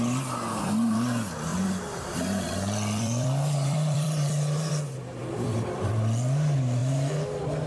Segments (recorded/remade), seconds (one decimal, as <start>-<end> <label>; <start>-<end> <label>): 0.0-1.5 recorded; 1.5-4.7 remade; 4.7-5.2 recorded; 5.2-5.9 remade; 5.9-7.7 recorded